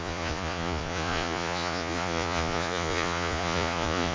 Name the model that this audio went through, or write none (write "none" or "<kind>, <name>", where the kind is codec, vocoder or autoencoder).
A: vocoder, Vocos